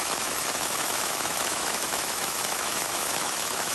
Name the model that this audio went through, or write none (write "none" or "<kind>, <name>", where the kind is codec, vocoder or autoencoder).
autoencoder, DAC-VAE